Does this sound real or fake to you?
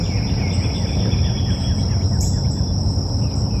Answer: real